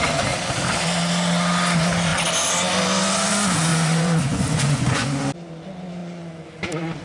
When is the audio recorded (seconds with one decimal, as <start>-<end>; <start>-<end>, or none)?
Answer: 0.0-3.7; 5.2-6.0; 6.5-7.0